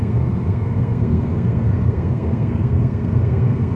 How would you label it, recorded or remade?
remade